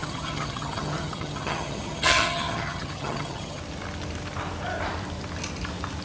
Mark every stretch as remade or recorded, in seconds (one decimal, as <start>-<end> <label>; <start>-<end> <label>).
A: 0.0-3.6 remade; 3.6-6.0 recorded